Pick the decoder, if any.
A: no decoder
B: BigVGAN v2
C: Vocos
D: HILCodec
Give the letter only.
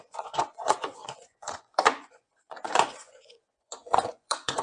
C